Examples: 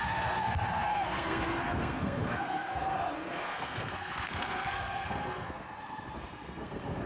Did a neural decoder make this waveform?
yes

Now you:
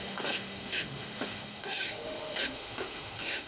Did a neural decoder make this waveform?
yes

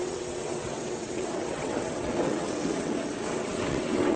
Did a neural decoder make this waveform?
yes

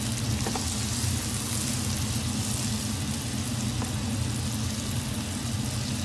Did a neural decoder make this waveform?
no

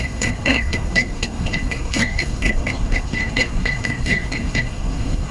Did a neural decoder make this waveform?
yes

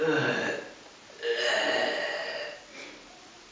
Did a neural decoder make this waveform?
no